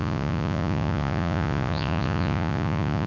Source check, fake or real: fake